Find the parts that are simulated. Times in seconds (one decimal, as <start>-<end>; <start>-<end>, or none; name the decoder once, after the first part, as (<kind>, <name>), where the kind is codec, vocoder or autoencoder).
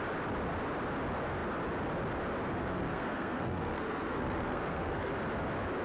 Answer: 2.6-5.1 (codec, SNAC)